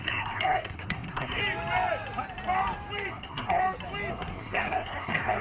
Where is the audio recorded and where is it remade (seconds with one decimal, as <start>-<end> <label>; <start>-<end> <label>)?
0.0-1.4 remade; 1.4-3.1 recorded; 3.1-3.6 remade; 3.6-4.1 recorded; 4.1-5.4 remade